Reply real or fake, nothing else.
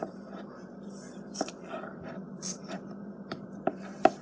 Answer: fake